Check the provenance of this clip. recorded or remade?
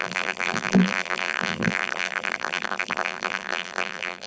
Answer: remade